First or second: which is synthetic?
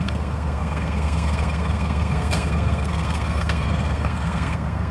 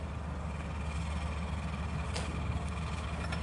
first